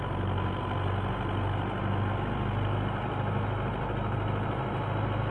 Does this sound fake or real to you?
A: real